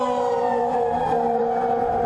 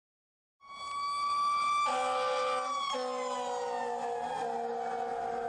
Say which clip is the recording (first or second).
second